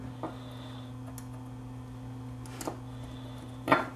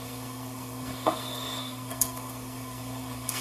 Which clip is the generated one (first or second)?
second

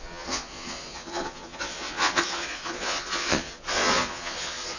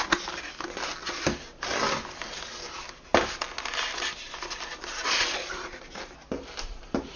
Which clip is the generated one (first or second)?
first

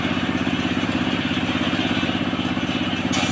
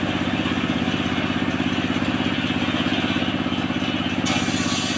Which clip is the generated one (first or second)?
first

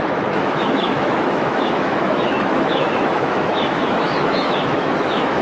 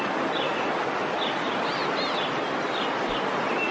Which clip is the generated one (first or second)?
first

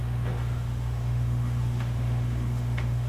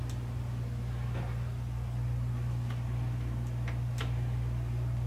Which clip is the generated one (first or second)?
first